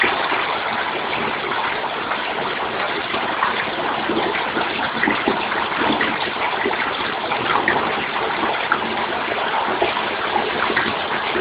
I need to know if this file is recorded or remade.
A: remade